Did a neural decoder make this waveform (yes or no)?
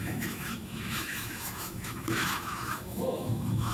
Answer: yes